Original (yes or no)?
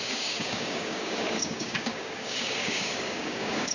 no